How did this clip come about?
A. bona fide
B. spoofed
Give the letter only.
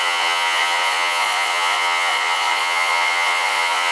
B